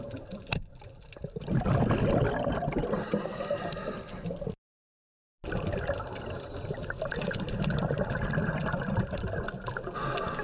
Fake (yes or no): yes